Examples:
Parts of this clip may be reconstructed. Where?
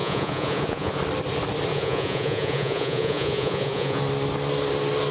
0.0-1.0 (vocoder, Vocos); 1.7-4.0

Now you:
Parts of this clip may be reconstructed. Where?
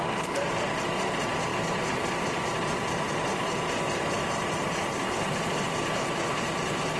none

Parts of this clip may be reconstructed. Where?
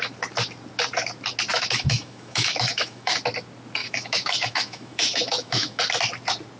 1.5-3.1 (autoencoder, DAC-VAE); 3.8-5.8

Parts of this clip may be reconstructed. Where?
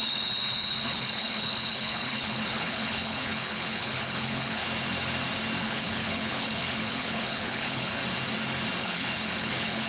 0.0-4.6 (codec, HILCodec); 5.6-8.0; 8.8-9.9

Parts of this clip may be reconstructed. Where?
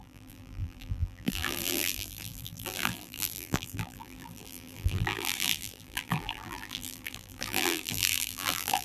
0.0-8.8 (vocoder, BigVGAN v2)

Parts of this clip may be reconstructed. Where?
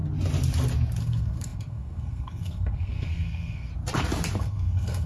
1.0-3.7 (codec, SNAC); 4.4-5.1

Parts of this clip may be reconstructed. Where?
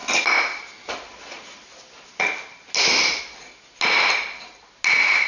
none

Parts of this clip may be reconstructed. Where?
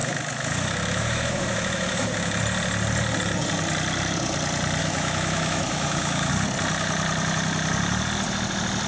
0.0-2.4 (autoencoder, DAC-VAE); 4.8-6.3